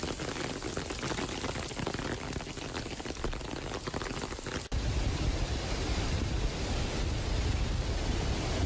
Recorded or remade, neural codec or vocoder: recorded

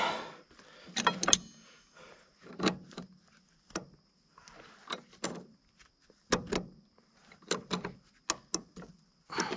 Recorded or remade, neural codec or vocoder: recorded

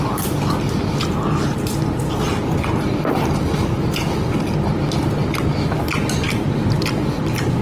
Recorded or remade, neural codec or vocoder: recorded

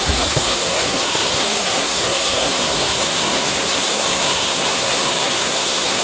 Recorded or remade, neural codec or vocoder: remade, codec, SNAC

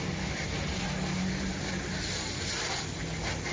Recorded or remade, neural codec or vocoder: recorded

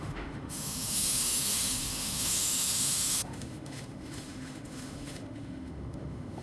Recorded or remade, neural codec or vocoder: remade, autoencoder, DAC-VAE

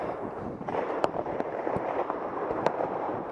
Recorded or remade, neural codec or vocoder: remade, vocoder, BigVGAN v2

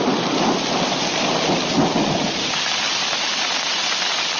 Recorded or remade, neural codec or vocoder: recorded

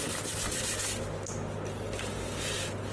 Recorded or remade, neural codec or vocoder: recorded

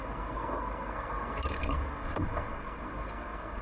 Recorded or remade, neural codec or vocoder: remade, codec, SNAC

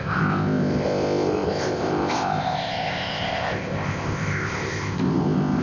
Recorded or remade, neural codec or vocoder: remade, codec, ZipCodec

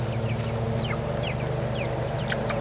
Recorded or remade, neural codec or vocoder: recorded